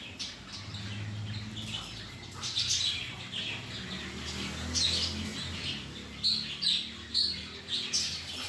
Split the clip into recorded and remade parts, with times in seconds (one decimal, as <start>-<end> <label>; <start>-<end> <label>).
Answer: 0.0-8.5 recorded